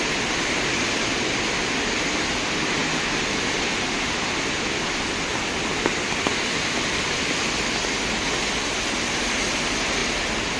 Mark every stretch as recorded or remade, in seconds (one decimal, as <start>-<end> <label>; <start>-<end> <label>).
0.0-10.6 recorded